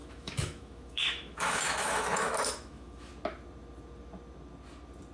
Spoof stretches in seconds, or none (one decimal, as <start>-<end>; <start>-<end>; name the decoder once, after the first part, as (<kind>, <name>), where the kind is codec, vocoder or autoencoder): 0.0-3.1 (autoencoder, DAC-VAE)